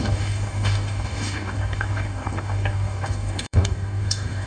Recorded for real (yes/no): no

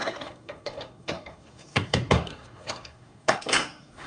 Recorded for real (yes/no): no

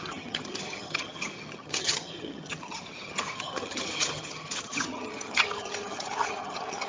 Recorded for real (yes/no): no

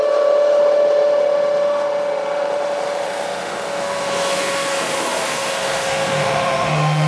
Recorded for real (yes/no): no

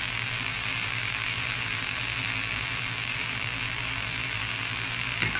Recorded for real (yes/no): no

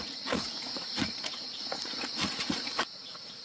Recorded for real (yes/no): no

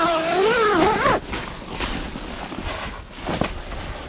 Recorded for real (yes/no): yes